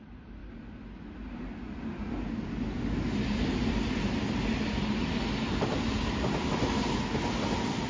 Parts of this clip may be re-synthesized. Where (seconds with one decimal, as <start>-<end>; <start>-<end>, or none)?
none

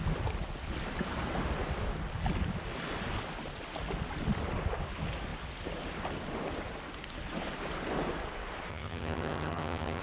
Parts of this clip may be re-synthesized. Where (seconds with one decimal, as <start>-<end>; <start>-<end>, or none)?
8.7-10.0

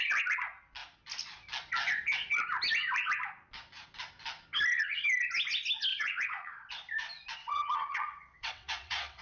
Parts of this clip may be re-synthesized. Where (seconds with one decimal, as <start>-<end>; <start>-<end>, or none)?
5.9-6.7; 7.4-9.2

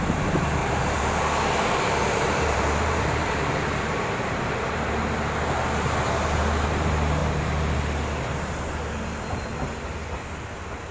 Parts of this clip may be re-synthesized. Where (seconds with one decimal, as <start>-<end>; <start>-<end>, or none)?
0.6-5.1

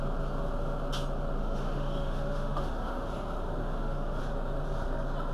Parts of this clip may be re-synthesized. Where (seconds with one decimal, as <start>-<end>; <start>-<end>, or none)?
1.4-3.1; 3.6-4.2

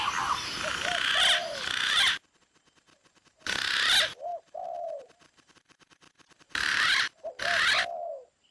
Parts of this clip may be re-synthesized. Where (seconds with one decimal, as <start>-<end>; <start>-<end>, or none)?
4.3-7.4